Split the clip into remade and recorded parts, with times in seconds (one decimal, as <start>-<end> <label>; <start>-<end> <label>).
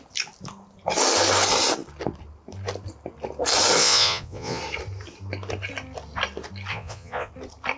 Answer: 0.0-3.8 recorded; 3.8-4.6 remade; 4.6-6.7 recorded; 6.7-7.3 remade; 7.3-7.8 recorded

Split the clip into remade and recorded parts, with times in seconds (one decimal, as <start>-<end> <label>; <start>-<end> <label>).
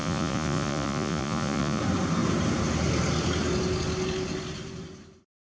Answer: 0.0-1.8 remade; 1.8-5.4 recorded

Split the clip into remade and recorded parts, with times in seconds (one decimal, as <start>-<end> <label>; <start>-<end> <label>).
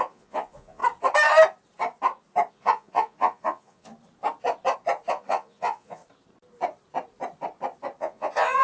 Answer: 0.0-0.8 remade; 0.8-2.5 recorded; 2.5-3.9 remade; 3.9-5.1 recorded; 5.1-6.0 remade; 6.0-8.0 recorded; 8.0-8.6 remade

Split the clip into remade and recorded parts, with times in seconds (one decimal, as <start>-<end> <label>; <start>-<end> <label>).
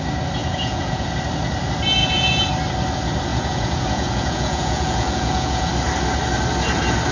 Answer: 0.0-0.4 recorded; 0.4-1.1 remade; 1.1-2.0 recorded; 2.0-2.5 remade; 2.5-3.3 recorded; 3.3-5.7 remade; 5.7-7.1 recorded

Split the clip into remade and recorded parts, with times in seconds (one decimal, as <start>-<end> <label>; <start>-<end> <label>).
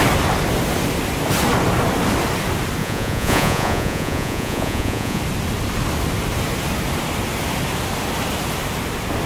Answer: 0.0-2.8 recorded; 2.8-5.2 remade; 5.2-9.3 recorded